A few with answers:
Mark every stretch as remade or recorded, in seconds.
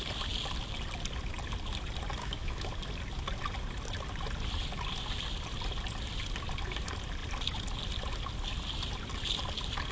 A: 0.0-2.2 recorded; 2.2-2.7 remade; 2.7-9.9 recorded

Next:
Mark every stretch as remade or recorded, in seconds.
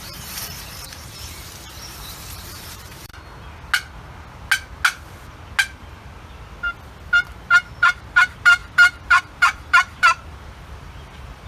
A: 0.0-3.1 remade; 3.1-7.8 recorded; 7.8-11.5 remade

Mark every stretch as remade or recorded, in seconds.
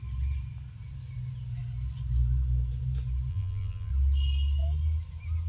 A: 0.0-3.3 recorded; 3.3-3.9 remade; 3.9-5.5 recorded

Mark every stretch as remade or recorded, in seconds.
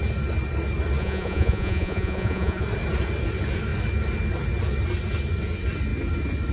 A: 0.0-1.0 recorded; 1.0-2.6 remade; 2.6-6.5 recorded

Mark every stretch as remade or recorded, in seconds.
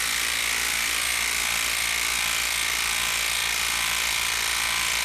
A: 0.0-5.0 remade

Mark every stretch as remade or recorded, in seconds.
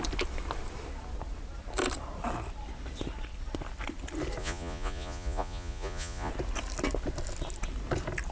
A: 0.0-4.4 recorded; 4.4-6.3 remade; 6.3-8.3 recorded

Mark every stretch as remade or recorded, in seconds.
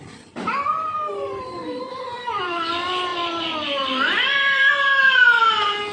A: 0.0-5.9 remade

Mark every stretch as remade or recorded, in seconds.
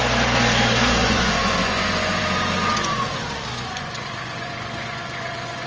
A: 0.0-1.0 recorded; 1.0-2.2 remade; 2.2-2.6 recorded; 2.6-5.7 remade